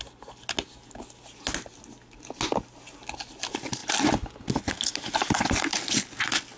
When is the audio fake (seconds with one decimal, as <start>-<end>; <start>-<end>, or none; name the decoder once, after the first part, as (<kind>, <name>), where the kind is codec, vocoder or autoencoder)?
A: none